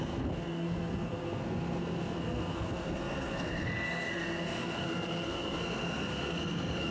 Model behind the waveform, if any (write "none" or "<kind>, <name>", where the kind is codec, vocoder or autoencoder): codec, SNAC